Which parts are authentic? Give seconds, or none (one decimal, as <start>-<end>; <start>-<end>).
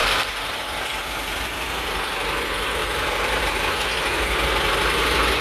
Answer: 0.6-2.8; 3.4-5.4